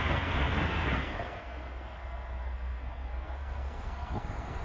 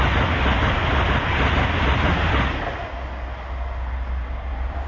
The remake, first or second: first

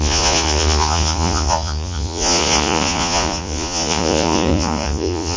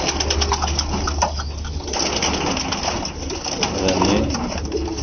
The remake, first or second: first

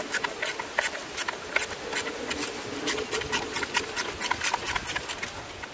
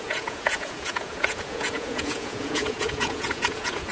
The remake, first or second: second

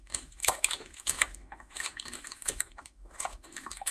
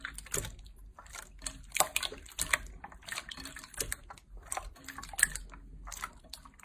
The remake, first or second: first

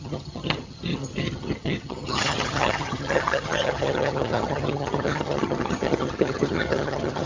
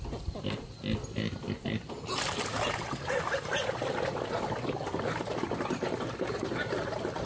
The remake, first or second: first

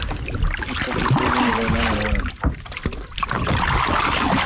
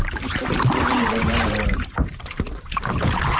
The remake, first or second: second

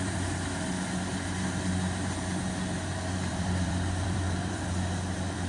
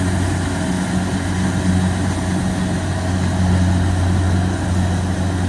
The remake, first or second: first